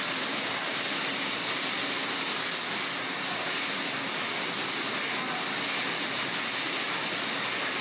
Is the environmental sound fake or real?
real